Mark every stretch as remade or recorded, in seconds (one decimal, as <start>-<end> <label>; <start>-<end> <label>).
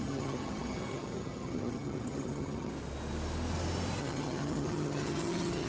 0.0-2.7 remade; 2.7-4.0 recorded; 4.0-5.7 remade